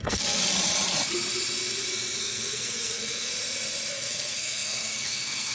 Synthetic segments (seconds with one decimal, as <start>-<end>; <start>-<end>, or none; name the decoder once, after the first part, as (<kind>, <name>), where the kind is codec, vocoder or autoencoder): 0.0-0.4 (codec, SNAC); 2.2-3.3; 3.9-5.5